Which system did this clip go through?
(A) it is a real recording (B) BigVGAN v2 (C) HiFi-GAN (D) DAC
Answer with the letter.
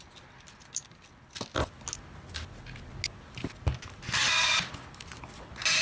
A